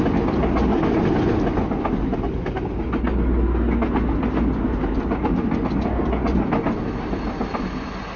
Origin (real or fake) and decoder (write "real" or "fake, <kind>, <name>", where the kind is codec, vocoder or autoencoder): real